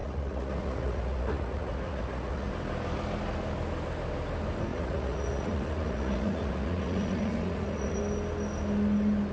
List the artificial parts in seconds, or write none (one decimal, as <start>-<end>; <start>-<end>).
0.0-2.5; 4.7-8.0